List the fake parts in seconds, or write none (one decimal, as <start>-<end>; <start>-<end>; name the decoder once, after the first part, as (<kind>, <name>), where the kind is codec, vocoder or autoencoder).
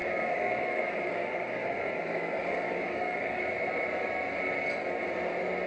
0.0-3.4 (codec, DAC)